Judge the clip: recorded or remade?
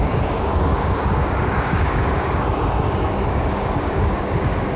remade